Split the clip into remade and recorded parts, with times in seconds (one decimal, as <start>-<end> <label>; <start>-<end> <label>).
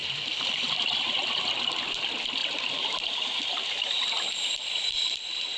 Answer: 0.0-0.9 remade; 0.9-2.4 recorded; 2.4-5.6 remade